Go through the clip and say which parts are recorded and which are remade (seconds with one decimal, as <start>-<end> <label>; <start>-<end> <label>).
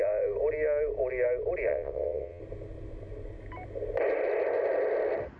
0.0-1.7 recorded; 1.7-2.4 remade; 2.4-5.4 recorded